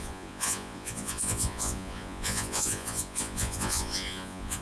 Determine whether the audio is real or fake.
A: fake